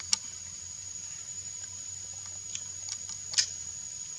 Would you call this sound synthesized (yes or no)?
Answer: no